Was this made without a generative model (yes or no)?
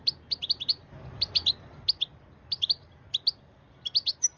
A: yes